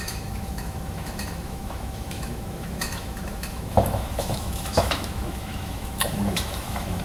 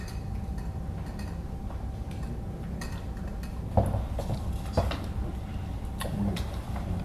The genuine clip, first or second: second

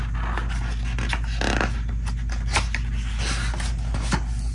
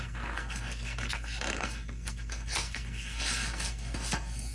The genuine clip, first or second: first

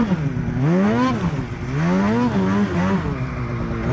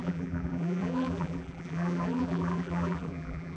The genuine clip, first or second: first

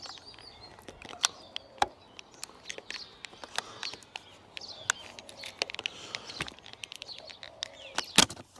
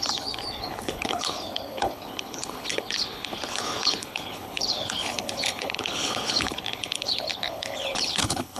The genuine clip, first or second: first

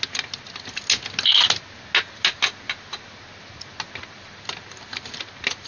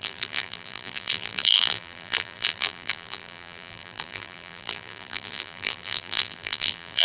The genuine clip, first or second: first